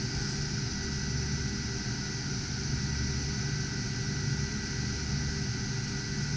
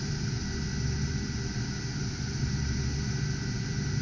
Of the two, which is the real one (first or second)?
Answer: first